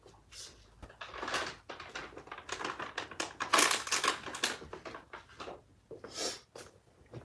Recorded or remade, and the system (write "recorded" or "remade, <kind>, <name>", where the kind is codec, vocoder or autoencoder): recorded